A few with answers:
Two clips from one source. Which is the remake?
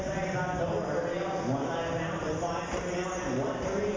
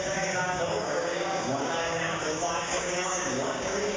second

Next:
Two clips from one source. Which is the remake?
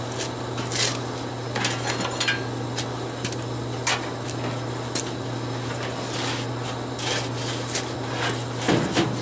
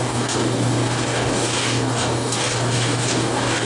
second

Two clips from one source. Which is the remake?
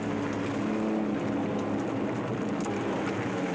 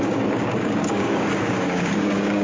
second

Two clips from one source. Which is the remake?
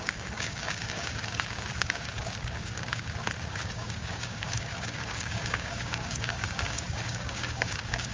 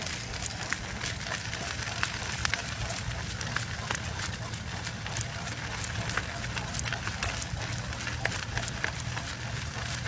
first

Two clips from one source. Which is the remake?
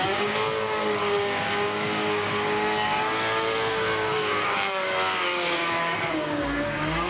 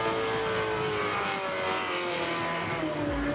first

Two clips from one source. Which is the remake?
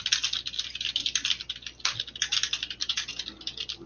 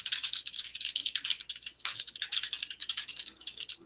second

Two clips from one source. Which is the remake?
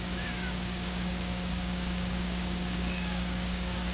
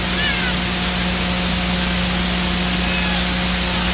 first